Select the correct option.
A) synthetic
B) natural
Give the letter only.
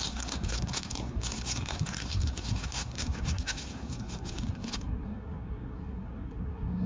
A